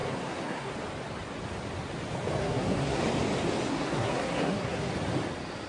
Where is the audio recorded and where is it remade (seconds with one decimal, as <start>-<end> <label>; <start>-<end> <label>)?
0.0-0.7 remade; 0.7-2.4 recorded; 2.4-3.0 remade; 3.0-3.7 recorded; 3.7-4.9 remade; 4.9-5.7 recorded